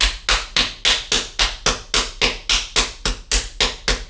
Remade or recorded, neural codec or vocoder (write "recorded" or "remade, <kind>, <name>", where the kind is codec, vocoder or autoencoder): recorded